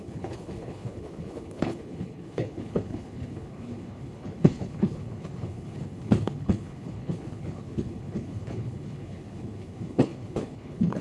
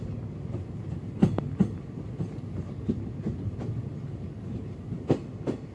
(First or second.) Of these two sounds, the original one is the second